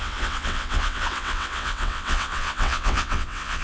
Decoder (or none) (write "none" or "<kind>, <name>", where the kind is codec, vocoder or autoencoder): vocoder, WaveNeXt